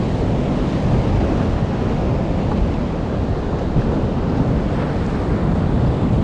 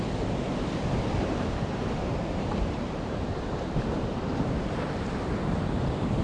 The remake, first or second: second